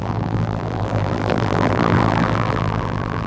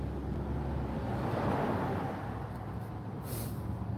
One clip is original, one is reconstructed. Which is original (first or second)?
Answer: second